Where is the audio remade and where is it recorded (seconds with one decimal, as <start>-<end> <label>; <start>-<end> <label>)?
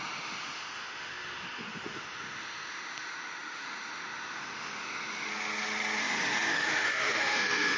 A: 0.0-5.3 remade; 5.3-6.0 recorded; 6.0-7.8 remade